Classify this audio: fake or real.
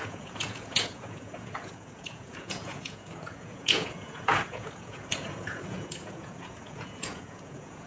fake